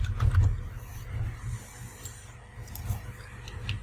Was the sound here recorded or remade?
recorded